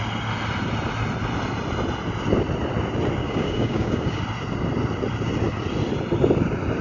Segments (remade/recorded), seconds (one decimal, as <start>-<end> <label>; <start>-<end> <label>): 0.0-3.2 recorded; 3.2-4.2 remade; 4.2-6.8 recorded